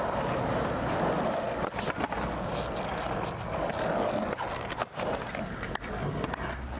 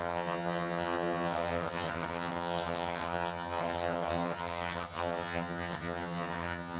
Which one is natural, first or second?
first